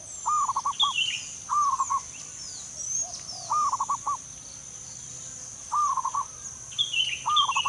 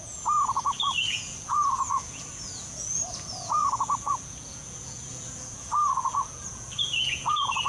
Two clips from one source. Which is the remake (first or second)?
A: second